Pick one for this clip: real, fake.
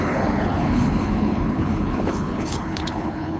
fake